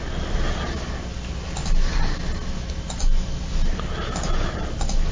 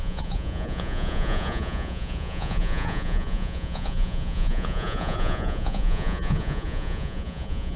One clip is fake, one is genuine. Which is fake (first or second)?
second